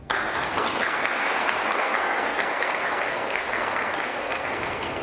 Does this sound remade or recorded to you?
remade